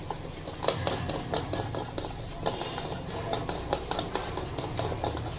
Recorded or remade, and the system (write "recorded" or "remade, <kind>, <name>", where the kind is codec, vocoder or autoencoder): recorded